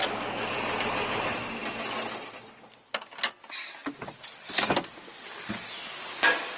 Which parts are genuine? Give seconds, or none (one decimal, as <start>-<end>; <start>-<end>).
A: 0.0-6.6